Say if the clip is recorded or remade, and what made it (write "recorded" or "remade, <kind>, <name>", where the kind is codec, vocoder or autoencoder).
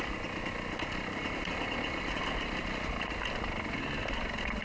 recorded